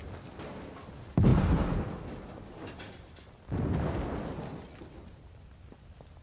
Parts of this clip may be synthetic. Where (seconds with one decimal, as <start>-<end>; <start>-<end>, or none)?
none